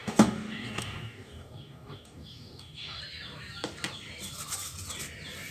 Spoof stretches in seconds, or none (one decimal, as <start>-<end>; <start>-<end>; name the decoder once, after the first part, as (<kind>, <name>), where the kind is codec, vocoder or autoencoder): 0.0-3.0 (codec, DAC)